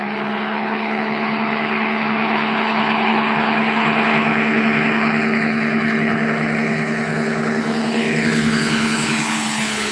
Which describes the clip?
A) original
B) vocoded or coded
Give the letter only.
B